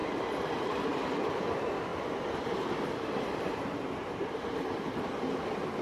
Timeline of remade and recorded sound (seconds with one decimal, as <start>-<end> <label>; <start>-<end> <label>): 0.0-4.0 recorded; 4.0-5.1 remade; 5.1-5.8 recorded